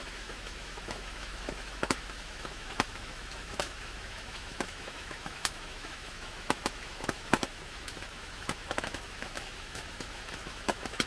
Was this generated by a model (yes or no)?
yes